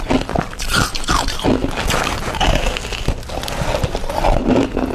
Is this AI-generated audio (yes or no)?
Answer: no